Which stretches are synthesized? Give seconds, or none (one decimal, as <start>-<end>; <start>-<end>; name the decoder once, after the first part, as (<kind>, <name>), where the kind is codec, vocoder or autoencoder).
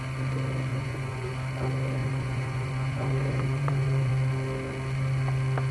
0.7-1.3 (vocoder, Vocos); 2.0-4.1